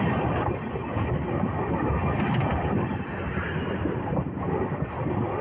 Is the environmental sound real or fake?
fake